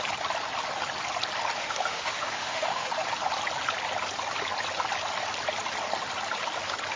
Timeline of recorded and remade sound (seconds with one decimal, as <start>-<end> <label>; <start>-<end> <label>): 0.0-1.6 recorded; 1.6-2.9 remade; 2.9-7.0 recorded